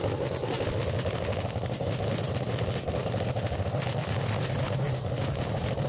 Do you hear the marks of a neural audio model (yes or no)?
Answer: no